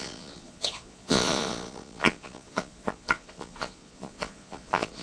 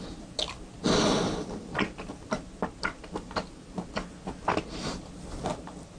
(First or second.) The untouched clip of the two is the second